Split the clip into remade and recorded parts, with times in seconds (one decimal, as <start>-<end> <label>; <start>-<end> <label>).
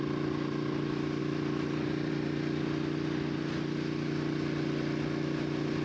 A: 0.0-1.2 recorded; 1.2-2.1 remade; 2.1-5.8 recorded